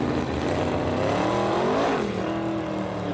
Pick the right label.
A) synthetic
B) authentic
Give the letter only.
B